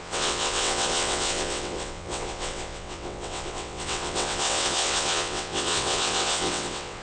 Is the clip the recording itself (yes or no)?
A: no